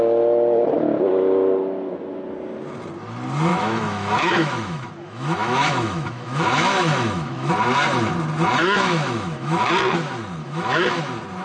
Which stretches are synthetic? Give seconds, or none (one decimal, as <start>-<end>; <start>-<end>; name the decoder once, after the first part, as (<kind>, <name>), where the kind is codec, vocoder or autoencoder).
3.5-7.5 (autoencoder, DAC-VAE); 8.6-9.7; 10.4-11.0